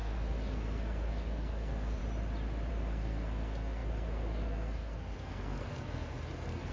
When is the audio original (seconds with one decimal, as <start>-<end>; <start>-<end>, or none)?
2.0-2.7